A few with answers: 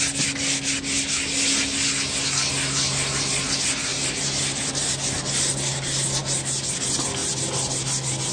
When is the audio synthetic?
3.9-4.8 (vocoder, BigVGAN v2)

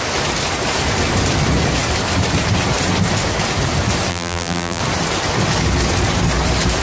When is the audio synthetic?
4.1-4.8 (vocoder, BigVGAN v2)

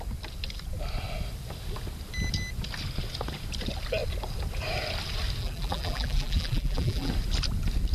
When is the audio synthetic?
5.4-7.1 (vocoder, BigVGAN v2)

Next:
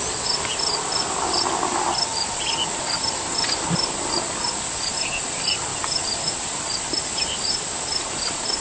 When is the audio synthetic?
0.0-2.1 (vocoder, BigVGAN v2); 2.8-8.6